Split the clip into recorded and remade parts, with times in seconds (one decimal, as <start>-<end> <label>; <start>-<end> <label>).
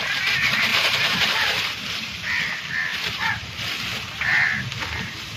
0.0-0.7 recorded; 0.7-2.4 remade; 2.4-2.9 recorded; 2.9-3.5 remade; 3.5-5.4 recorded